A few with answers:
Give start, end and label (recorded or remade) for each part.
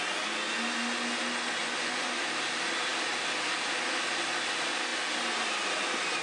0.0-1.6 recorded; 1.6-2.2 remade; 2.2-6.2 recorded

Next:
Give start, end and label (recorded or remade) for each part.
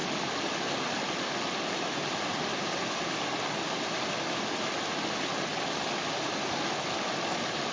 0.0-7.7 recorded